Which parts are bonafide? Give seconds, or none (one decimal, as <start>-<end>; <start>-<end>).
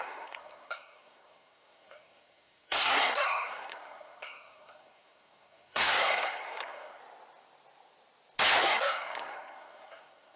7.0-8.6